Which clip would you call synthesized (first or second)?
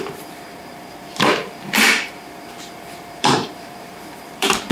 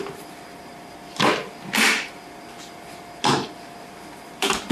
first